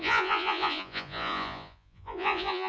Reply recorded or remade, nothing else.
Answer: remade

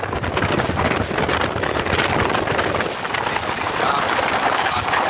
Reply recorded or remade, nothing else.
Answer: recorded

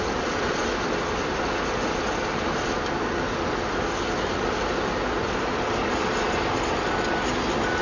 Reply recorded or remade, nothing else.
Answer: recorded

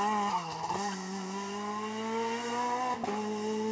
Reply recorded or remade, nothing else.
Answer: recorded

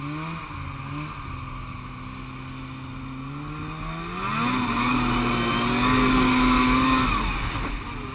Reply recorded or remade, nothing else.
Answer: recorded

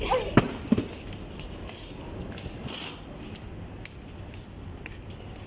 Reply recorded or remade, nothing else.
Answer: recorded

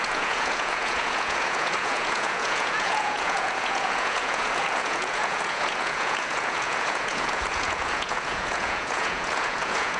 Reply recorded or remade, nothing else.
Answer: remade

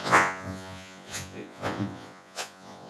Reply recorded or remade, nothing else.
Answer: remade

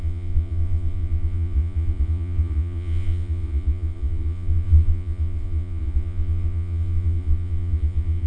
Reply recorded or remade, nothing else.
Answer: remade